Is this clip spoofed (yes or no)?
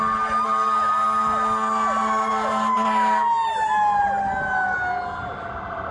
no